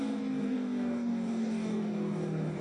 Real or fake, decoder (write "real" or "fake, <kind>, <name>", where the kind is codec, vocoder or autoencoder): fake, codec, DAC